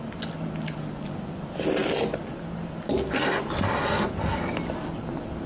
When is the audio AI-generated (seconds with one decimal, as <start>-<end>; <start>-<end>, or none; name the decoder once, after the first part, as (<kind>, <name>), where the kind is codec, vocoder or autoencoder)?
none